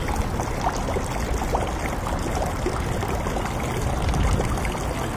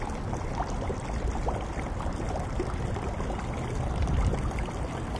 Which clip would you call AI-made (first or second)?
second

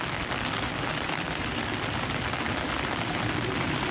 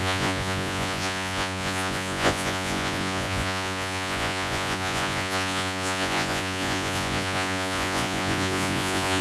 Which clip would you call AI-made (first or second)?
second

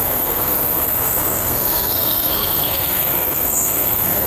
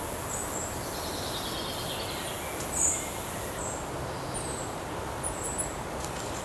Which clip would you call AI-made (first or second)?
first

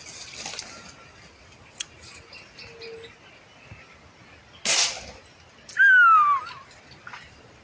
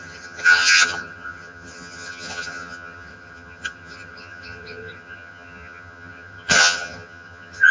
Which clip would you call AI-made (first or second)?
second